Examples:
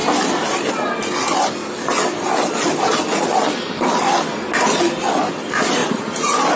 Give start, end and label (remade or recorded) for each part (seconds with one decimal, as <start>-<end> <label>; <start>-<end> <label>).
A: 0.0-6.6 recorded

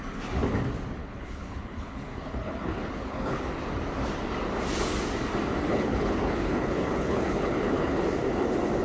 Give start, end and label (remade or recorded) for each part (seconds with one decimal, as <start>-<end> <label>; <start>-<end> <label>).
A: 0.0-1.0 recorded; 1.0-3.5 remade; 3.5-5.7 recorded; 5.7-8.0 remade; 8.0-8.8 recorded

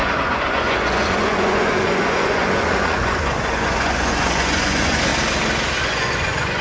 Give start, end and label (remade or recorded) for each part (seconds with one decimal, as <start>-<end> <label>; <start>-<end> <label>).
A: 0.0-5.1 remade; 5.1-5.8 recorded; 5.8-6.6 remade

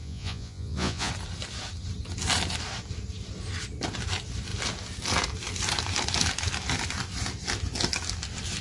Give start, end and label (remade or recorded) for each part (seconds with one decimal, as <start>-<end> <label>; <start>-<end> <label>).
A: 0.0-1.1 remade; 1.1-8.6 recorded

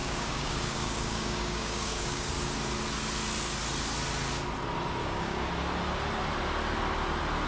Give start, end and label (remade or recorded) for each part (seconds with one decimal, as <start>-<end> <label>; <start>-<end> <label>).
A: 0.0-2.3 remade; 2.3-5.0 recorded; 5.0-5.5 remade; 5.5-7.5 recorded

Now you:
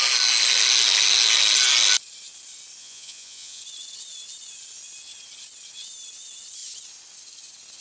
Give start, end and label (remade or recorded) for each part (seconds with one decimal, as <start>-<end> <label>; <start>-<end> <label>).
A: 0.0-2.8 recorded; 2.8-3.6 remade; 3.6-7.8 recorded

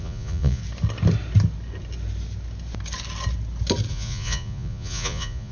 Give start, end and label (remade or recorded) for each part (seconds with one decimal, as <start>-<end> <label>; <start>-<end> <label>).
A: 0.0-0.6 remade; 0.6-3.9 recorded; 3.9-5.5 remade